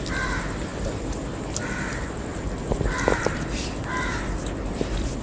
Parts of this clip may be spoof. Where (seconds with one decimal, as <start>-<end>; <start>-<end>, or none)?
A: none

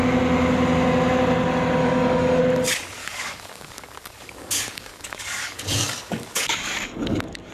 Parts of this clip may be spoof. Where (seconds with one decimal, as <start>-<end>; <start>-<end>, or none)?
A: 1.8-2.4; 3.0-7.5

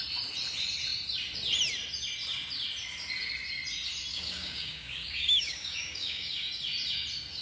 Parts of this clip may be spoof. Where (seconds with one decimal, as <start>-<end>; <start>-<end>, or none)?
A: 4.1-6.5